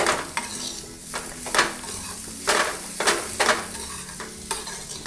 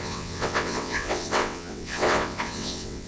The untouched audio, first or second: first